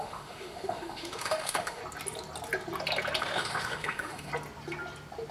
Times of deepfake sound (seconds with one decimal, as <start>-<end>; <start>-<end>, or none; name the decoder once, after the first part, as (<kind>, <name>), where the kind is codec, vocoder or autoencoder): 0.0-1.8 (autoencoder, DAC-VAE); 3.2-4.3